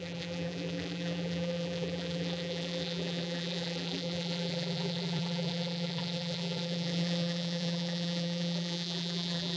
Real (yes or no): no